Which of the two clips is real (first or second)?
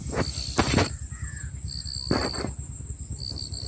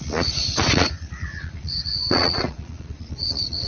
first